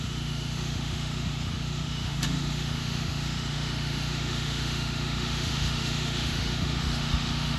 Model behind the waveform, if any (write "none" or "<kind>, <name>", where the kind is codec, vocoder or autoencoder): autoencoder, DAC-VAE